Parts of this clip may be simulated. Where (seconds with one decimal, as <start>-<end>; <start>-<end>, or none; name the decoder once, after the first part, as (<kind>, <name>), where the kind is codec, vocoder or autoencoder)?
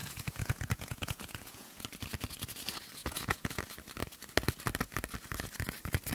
0.0-1.8 (vocoder, Vocos); 3.0-3.6